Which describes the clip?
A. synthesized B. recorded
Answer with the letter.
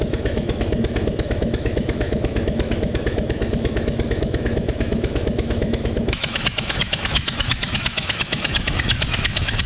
A